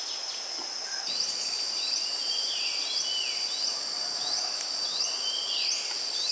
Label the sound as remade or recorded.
recorded